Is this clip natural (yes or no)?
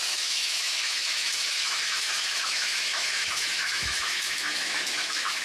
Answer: no